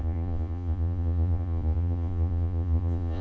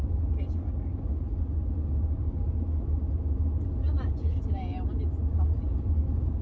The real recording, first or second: second